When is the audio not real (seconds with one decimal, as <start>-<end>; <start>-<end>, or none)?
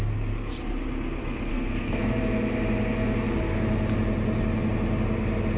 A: 1.5-2.0